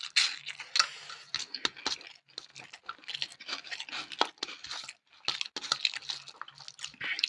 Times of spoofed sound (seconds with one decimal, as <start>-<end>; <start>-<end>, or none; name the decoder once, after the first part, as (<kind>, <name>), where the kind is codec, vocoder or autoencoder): none